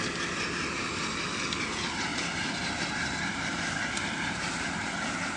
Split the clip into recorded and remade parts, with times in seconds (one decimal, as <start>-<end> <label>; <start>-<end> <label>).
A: 0.0-2.1 recorded; 2.1-5.4 remade